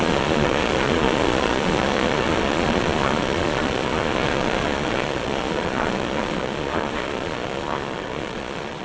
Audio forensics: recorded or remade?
remade